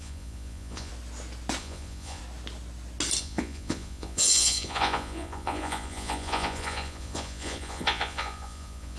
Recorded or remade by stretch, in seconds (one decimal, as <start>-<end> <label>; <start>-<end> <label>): 0.0-0.9 remade; 0.9-1.6 recorded; 1.6-2.2 remade; 2.2-3.2 recorded; 3.2-9.0 remade